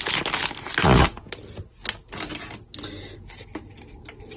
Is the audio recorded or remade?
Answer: recorded